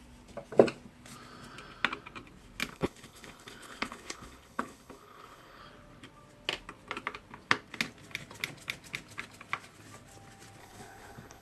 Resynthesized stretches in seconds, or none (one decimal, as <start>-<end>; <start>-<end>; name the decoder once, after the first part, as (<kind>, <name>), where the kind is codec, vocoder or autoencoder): 2.7-5.6 (codec, HILCodec); 10.6-11.4